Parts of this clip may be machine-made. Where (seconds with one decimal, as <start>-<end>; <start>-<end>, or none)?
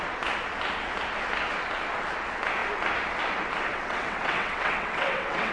3.7-5.5